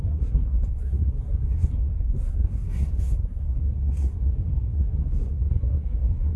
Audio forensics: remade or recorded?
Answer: remade